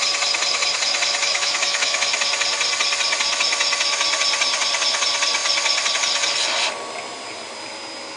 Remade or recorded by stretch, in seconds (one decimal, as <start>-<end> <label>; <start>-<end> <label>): 0.0-1.2 recorded; 1.2-2.1 remade; 2.1-8.2 recorded